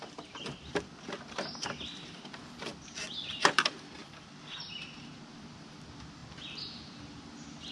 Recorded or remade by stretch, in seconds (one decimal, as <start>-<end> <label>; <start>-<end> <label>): 0.0-7.7 recorded